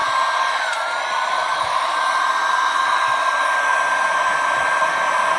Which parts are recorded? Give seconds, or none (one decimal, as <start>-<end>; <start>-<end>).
0.0-1.3; 1.9-5.4